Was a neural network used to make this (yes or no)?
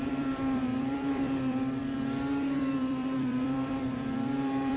yes